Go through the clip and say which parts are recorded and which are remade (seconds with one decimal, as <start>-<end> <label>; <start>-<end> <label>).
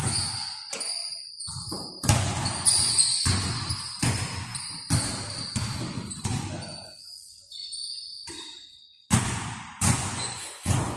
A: 0.0-4.5 remade; 4.5-6.1 recorded; 6.1-7.6 remade; 7.6-9.1 recorded; 9.1-11.0 remade